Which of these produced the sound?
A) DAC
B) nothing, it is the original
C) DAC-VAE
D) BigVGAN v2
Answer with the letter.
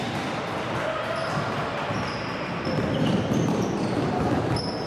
B